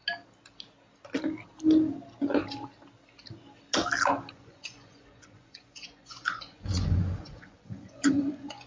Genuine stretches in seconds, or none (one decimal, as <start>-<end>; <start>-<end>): 0.0-4.3